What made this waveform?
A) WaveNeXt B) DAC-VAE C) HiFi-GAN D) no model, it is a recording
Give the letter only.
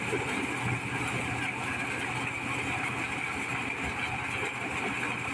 D